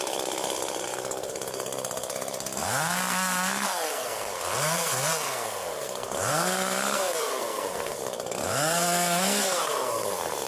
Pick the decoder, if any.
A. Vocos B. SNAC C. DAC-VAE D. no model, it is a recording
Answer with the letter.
B